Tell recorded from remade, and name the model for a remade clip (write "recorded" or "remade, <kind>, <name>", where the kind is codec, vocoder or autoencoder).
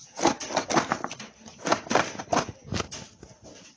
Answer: recorded